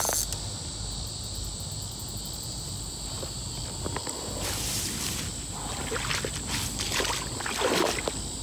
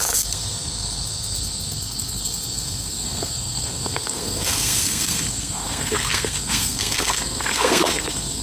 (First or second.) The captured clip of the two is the first